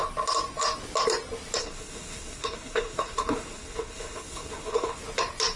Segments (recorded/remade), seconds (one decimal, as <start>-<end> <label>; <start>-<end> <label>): 0.0-1.6 recorded; 1.6-5.0 remade; 5.0-5.6 recorded